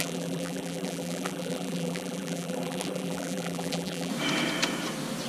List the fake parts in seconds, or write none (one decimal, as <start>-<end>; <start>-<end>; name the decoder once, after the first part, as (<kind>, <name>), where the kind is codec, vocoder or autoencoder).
0.0-4.1 (vocoder, BigVGAN v2)

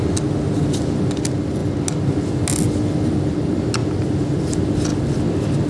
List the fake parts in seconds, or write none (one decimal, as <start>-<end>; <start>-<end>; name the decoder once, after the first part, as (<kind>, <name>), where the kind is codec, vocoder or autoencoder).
3.8-4.4 (vocoder, BigVGAN v2)

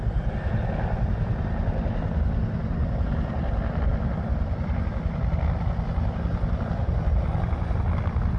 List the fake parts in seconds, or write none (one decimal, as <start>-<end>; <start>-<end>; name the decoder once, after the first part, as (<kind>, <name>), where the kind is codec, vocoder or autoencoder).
none

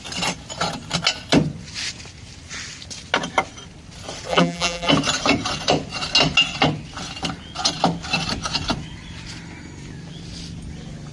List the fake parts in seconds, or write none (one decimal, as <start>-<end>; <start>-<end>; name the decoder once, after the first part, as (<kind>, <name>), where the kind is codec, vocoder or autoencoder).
4.3-4.9 (vocoder, BigVGAN v2)

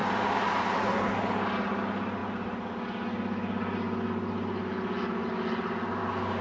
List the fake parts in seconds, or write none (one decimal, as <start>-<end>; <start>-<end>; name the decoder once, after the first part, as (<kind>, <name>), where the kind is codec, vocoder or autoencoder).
none

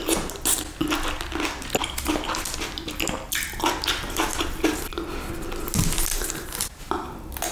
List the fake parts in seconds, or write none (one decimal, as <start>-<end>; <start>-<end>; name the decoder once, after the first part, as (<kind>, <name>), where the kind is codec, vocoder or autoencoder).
6.1-6.8 (vocoder, BigVGAN v2)

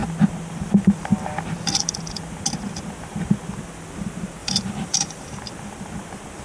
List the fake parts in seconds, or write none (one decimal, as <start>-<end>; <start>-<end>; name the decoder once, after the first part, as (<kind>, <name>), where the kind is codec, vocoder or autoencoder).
4.4-5.3 (vocoder, BigVGAN v2)

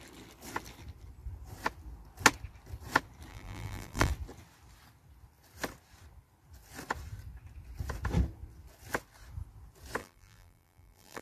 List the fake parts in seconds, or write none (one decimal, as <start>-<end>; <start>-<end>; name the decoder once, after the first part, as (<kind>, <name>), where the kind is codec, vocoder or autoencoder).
3.3-4.1 (vocoder, BigVGAN v2); 10.0-11.2